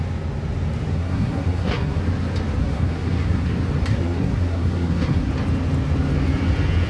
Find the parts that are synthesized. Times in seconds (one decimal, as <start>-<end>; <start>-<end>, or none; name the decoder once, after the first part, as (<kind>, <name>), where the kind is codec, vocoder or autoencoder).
0.9-2.0 (codec, SNAC); 2.6-3.5; 3.9-5.3